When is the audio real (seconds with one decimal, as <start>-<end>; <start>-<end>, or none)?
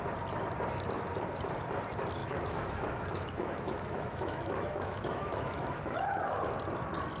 0.0-2.2; 6.5-7.2